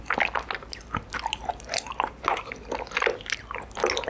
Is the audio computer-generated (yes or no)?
no